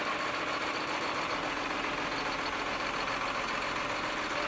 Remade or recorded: recorded